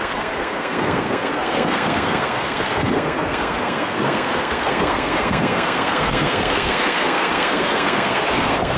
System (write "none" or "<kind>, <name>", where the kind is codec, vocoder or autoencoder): codec, SNAC